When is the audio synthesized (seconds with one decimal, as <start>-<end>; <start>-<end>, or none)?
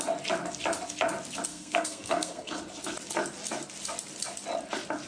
1.5-2.6